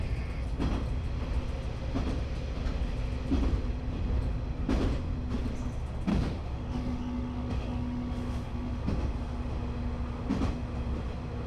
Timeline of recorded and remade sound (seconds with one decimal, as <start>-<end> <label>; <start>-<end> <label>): 0.0-6.1 recorded; 6.1-8.8 remade; 8.8-11.5 recorded